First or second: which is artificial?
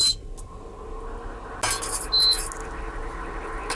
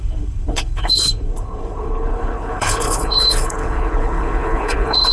second